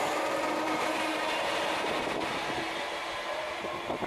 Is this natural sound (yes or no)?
yes